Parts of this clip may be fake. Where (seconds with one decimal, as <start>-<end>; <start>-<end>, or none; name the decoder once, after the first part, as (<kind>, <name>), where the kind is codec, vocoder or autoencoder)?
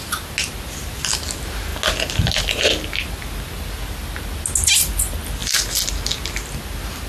none